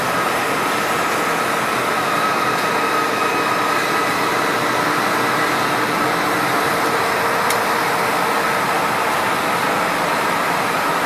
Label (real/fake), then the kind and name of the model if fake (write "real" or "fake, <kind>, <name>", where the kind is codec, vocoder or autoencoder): real